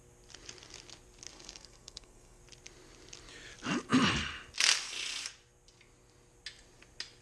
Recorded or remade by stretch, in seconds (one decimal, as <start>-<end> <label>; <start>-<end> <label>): 0.0-1.3 recorded; 1.3-2.4 remade; 2.4-7.2 recorded